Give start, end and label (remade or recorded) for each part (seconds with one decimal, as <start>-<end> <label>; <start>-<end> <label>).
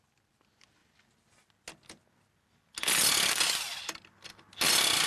0.0-5.1 recorded